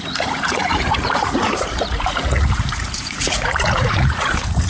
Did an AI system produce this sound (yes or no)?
yes